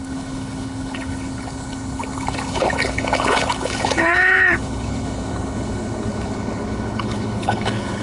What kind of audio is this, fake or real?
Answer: fake